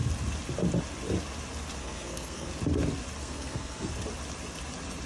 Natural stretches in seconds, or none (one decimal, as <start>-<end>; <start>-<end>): 0.0-1.8; 2.5-3.2; 3.9-5.1